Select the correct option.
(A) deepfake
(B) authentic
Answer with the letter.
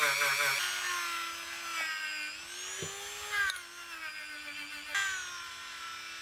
B